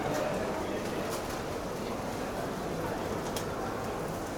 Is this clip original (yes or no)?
yes